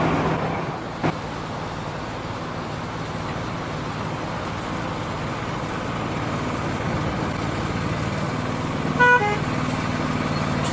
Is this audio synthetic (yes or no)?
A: no